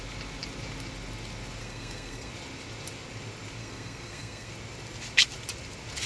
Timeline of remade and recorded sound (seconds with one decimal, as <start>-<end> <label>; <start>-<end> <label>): 0.0-1.6 recorded; 1.6-2.3 remade; 2.3-3.6 recorded; 3.6-4.5 remade; 4.5-6.1 recorded